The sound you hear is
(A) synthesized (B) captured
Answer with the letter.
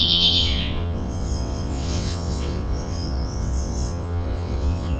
A